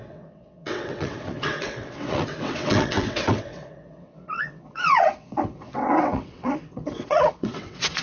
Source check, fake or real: fake